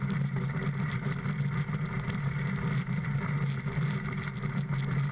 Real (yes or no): yes